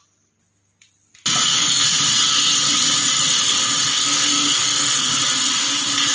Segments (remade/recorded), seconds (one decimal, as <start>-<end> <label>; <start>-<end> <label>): 0.0-1.5 recorded; 1.5-2.2 remade; 2.2-3.9 recorded; 3.9-5.2 remade; 5.2-6.1 recorded